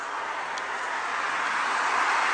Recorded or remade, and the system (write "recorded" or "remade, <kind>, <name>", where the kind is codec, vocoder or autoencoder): recorded